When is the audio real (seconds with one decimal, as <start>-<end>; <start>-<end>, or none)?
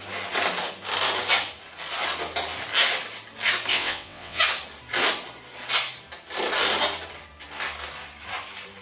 0.0-3.7; 4.4-8.8